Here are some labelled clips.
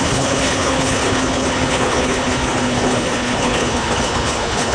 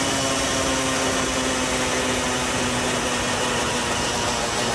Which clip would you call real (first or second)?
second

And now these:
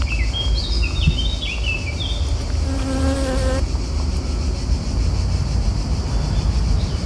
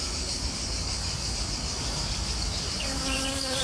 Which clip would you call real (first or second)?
first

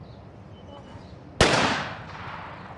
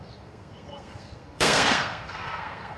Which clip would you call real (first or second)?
first